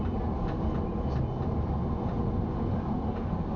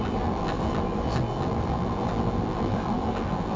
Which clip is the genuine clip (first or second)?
first